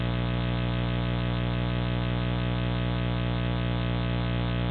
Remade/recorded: recorded